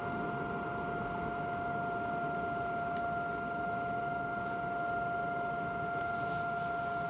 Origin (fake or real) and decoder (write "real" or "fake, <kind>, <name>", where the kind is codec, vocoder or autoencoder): real